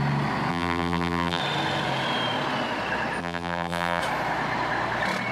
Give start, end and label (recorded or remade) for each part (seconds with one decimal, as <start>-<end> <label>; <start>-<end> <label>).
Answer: 0.0-0.5 recorded; 0.5-1.4 remade; 1.4-3.2 recorded; 3.2-4.0 remade; 4.0-5.3 recorded